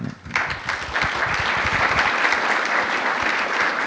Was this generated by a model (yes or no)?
no